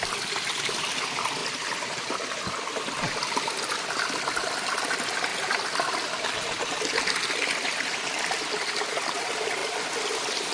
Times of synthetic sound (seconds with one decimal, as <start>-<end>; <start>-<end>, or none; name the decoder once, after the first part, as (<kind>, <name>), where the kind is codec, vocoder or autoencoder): 5.3-6.2 (vocoder, BigVGAN v2); 9.6-10.5